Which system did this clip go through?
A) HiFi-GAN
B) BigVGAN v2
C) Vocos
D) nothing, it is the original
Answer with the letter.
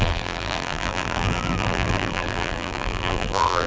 B